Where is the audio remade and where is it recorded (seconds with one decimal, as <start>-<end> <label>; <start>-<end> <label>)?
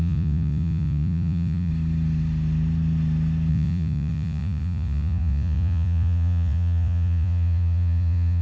0.0-1.7 remade; 1.7-3.5 recorded; 3.5-8.4 remade